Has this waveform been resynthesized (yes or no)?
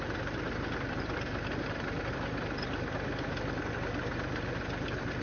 yes